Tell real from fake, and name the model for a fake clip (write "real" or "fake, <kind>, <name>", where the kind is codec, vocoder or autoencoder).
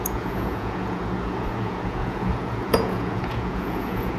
fake, vocoder, Vocos